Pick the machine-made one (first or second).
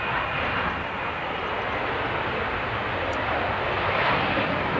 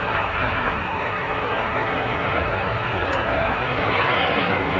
second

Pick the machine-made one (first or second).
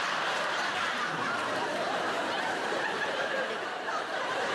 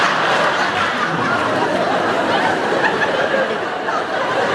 first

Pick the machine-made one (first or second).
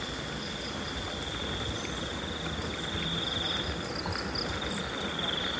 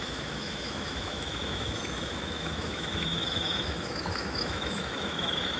second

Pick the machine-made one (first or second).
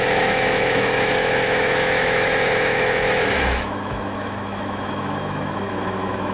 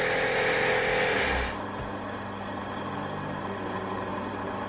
first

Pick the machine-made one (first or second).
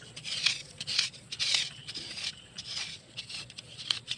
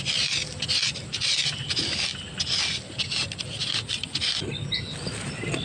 first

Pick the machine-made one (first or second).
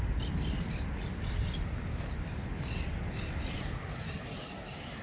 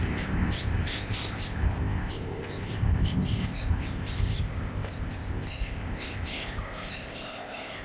second